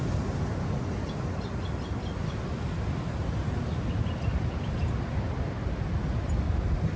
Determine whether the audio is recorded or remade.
recorded